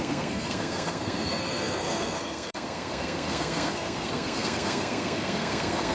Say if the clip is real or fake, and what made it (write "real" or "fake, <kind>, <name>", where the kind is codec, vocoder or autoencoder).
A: fake, codec, SNAC